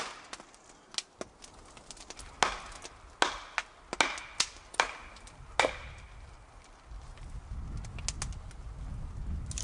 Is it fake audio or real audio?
real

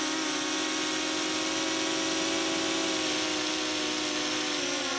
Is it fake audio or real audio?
real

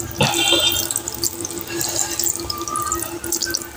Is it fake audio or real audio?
real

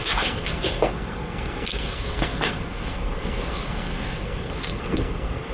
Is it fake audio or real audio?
fake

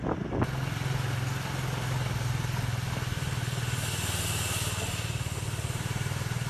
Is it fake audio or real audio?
real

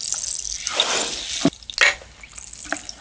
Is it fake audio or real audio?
real